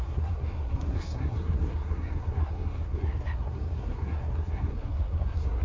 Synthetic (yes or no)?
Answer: yes